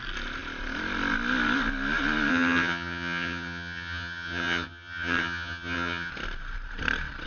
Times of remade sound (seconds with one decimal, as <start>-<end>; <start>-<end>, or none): 2.3-6.1